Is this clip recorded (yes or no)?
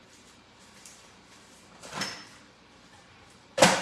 no